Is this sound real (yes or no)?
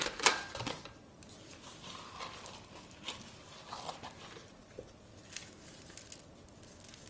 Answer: yes